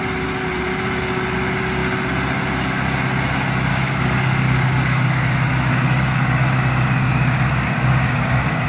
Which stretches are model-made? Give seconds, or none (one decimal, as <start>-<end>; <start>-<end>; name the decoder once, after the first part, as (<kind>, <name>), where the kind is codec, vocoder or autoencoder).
3.7-8.7 (codec, DAC)